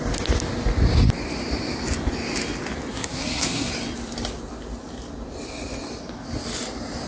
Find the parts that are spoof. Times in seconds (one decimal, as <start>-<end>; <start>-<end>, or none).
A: 2.9-3.7